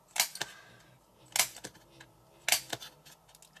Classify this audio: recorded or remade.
recorded